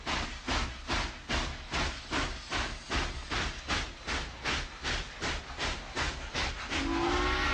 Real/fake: real